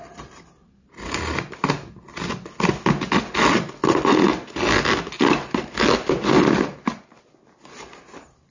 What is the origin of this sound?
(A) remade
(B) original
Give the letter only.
B